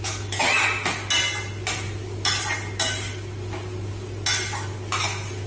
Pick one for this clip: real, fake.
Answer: real